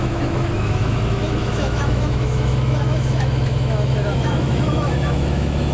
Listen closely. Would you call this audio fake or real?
fake